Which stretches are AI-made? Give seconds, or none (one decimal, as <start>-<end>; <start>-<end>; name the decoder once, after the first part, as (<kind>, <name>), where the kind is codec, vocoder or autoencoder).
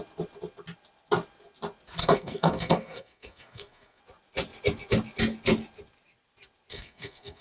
2.0-4.0 (codec, SNAC); 6.7-7.4